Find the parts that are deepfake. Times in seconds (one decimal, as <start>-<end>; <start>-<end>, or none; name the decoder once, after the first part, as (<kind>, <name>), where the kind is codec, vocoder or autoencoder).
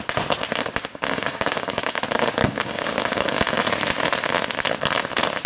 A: 0.9-2.0 (codec, DAC); 2.4-3.5